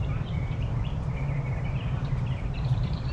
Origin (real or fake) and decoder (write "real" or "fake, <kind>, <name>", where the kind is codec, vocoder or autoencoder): fake, vocoder, BigVGAN v2